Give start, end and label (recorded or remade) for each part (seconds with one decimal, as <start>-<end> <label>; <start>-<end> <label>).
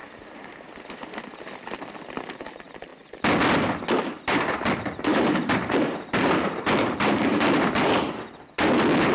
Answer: 0.0-5.1 recorded; 5.1-7.7 remade; 7.7-9.1 recorded